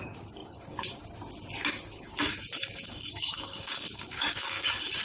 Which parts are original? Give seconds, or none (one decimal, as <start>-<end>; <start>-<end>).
0.0-0.4; 1.0-1.9